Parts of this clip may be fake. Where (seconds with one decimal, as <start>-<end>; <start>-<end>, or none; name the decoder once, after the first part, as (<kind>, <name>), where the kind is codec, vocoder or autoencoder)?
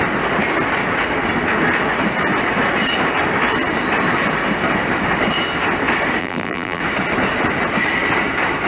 6.2-6.8 (vocoder, BigVGAN v2)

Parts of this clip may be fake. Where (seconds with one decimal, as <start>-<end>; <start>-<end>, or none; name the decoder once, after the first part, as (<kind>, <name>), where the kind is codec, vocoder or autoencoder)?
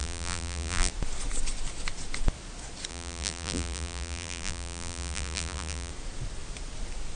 0.0-0.9 (vocoder, BigVGAN v2); 2.9-5.9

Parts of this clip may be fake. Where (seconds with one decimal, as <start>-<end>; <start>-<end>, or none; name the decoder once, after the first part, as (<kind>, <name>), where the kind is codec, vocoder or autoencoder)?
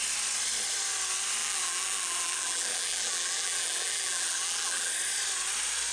1.4-4.9 (vocoder, BigVGAN v2)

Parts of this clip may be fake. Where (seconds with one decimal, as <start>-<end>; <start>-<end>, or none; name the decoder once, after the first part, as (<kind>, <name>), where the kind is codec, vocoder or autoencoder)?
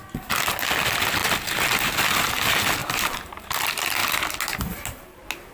2.8-3.5 (vocoder, BigVGAN v2)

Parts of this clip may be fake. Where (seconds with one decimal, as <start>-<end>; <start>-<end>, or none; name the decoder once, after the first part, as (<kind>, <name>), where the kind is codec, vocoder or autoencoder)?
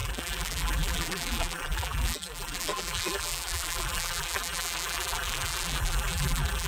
0.0-6.7 (vocoder, BigVGAN v2)